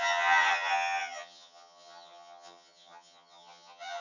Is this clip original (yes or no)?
no